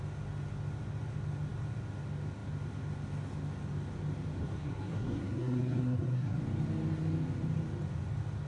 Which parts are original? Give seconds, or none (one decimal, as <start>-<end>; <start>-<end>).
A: 0.0-4.4; 6.4-8.5